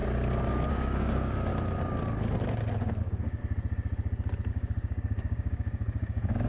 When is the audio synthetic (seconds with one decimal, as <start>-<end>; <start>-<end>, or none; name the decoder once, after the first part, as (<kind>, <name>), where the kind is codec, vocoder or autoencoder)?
0.7-1.5 (codec, DAC); 3.0-3.4; 4.5-6.5